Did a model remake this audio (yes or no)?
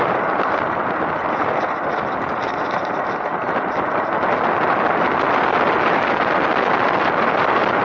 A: no